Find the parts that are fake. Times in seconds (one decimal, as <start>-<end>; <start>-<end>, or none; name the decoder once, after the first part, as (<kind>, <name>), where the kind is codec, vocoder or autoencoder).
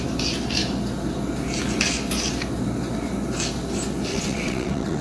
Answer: 4.1-5.0 (vocoder, WaveNeXt)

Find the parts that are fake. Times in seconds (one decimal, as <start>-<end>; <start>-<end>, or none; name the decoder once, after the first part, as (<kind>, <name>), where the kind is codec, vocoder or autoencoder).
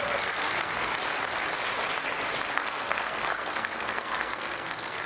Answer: 0.0-0.9 (codec, SNAC); 2.5-5.1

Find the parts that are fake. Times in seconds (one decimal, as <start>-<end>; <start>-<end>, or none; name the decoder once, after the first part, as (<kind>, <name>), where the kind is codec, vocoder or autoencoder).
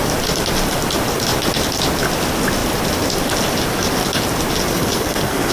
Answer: 4.7-5.5 (codec, SNAC)